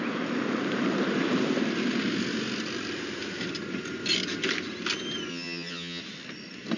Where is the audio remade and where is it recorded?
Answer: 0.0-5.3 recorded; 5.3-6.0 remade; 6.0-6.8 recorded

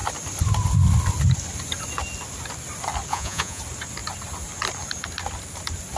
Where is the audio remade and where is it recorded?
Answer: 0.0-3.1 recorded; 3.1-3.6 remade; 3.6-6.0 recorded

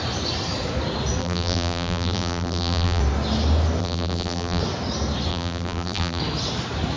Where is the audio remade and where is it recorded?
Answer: 0.0-1.2 recorded; 1.2-3.0 remade; 3.0-3.8 recorded; 3.8-4.6 remade; 4.6-5.3 recorded; 5.3-6.2 remade; 6.2-7.0 recorded

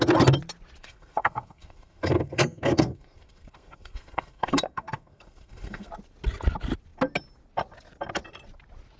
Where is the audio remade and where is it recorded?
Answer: 0.0-0.8 recorded; 0.8-5.9 remade; 5.9-9.0 recorded

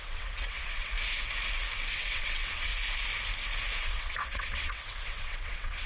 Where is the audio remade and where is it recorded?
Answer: 0.0-0.9 remade; 0.9-1.9 recorded; 1.9-2.7 remade; 2.7-3.8 recorded; 3.8-5.9 remade

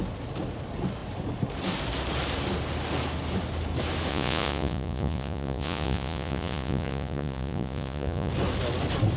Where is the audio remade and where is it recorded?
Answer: 0.0-4.1 recorded; 4.1-8.3 remade; 8.3-9.2 recorded